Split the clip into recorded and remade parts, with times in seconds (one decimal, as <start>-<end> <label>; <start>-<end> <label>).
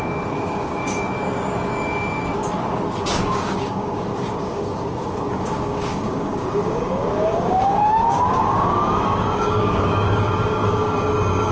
0.0-2.4 remade; 2.4-3.3 recorded; 3.3-11.5 remade